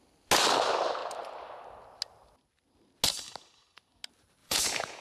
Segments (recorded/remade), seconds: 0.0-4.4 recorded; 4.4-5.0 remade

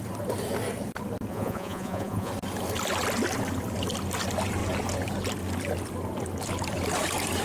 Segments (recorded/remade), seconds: 0.0-1.3 recorded; 1.3-2.3 remade; 2.3-7.4 recorded

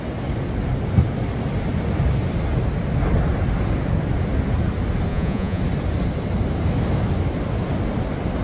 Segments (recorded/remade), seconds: 0.0-5.1 recorded; 5.1-5.6 remade; 5.6-8.4 recorded

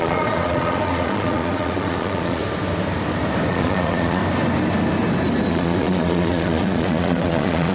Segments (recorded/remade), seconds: 0.0-2.4 remade; 2.4-3.5 recorded; 3.5-4.2 remade; 4.2-5.5 recorded; 5.5-7.7 remade

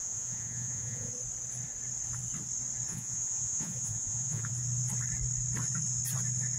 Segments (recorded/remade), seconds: 0.0-1.1 remade; 1.1-2.9 recorded; 2.9-4.5 remade; 4.5-6.6 recorded